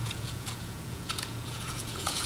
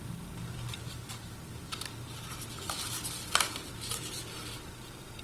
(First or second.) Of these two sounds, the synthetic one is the first